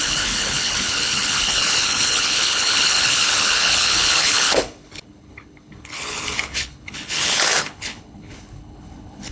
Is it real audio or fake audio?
fake